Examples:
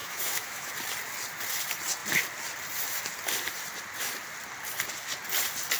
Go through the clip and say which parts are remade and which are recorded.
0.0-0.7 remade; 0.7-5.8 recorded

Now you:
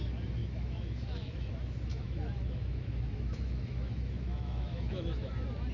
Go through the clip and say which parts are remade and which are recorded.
0.0-0.4 recorded; 0.4-1.5 remade; 1.5-1.9 recorded; 1.9-5.3 remade; 5.3-5.7 recorded

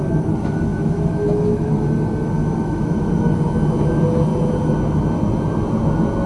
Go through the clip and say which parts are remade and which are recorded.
0.0-0.7 recorded; 0.7-1.7 remade; 1.7-2.4 recorded; 2.4-3.3 remade; 3.3-6.3 recorded